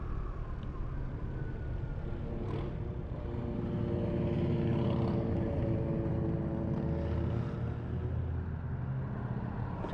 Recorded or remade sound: recorded